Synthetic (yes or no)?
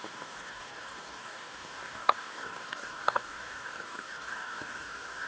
yes